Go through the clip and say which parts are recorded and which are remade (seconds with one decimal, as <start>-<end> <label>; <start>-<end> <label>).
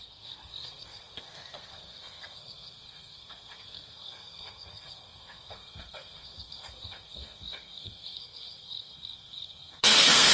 0.0-10.3 remade